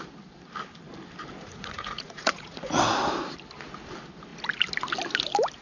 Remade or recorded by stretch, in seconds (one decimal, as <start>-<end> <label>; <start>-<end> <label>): 0.0-1.4 recorded; 1.4-2.8 remade; 2.8-5.6 recorded